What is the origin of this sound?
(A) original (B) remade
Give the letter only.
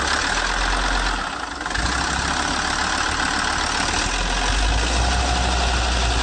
A